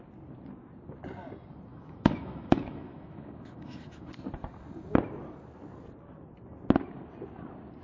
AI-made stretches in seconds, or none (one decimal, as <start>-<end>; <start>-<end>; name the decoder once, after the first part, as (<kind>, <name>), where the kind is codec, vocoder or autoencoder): 1.7-4.1 (autoencoder, DAC-VAE)